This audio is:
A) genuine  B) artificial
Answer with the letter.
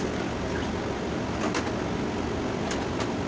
A